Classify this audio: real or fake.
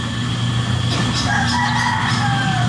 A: real